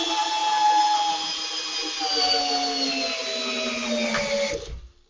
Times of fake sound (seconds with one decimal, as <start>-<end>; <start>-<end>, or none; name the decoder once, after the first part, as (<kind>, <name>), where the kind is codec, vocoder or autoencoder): none